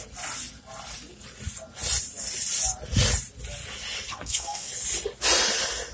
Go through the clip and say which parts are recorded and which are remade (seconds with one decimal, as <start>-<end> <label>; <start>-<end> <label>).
0.0-4.1 recorded; 4.1-4.7 remade; 4.7-5.9 recorded